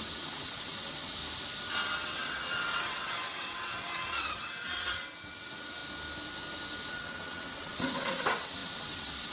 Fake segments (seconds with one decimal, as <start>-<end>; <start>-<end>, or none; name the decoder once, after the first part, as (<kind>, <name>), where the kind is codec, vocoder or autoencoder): 0.0-1.2 (vocoder, WaveNeXt); 1.7-5.8; 6.9-9.3